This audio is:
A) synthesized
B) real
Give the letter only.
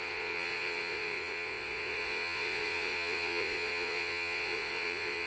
A